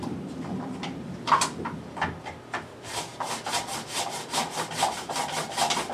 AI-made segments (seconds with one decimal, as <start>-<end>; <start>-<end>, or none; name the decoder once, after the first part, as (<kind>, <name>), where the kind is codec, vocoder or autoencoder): none

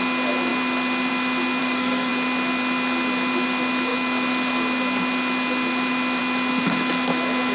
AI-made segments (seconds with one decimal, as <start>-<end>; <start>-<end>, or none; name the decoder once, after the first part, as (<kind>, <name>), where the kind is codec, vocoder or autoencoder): 1.6-2.1 (codec, DAC)

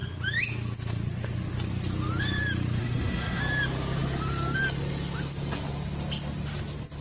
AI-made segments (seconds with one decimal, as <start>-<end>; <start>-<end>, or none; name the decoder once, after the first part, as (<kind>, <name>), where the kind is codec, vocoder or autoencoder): 2.8-3.4 (codec, SNAC)

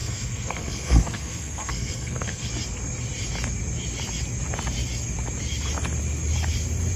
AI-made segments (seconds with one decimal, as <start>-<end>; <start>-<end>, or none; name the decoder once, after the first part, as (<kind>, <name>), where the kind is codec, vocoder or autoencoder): 0.0-2.5 (codec, SNAC)

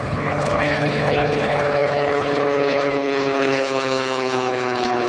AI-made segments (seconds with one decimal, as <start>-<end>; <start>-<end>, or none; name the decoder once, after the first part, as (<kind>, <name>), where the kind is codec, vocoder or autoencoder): 0.0-5.1 (codec, HILCodec)

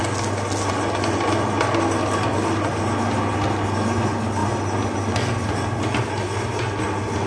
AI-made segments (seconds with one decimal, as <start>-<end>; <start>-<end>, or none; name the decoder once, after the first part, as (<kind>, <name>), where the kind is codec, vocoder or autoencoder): none

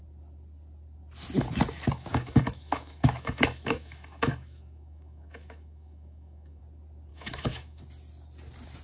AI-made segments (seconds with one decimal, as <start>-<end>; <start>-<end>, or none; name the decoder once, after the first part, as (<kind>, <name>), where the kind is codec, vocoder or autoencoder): 2.1-6.6 (autoencoder, DAC-VAE); 7.1-7.8